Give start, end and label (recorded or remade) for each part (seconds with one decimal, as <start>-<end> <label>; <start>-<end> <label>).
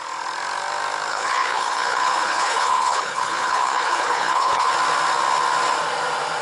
0.0-1.1 recorded; 1.1-4.7 remade; 4.7-6.4 recorded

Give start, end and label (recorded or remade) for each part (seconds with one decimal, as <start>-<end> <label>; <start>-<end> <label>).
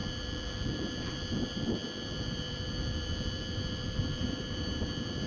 0.0-5.3 remade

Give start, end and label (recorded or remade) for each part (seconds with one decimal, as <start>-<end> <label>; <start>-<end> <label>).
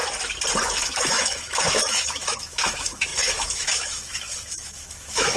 0.0-0.6 recorded; 0.6-5.4 remade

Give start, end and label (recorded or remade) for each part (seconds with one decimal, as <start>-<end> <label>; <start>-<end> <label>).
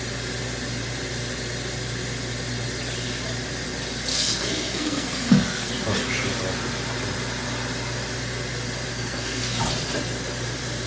0.0-4.1 recorded; 4.1-5.7 remade; 5.7-8.9 recorded; 8.9-9.6 remade; 9.6-10.9 recorded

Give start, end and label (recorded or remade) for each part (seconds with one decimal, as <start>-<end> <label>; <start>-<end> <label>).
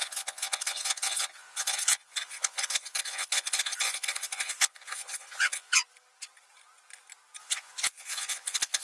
0.0-5.8 remade; 5.8-7.4 recorded; 7.4-8.8 remade